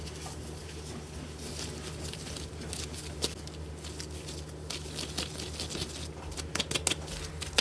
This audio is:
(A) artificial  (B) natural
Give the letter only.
B